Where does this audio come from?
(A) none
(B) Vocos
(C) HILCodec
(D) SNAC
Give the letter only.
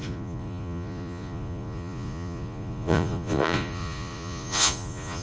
B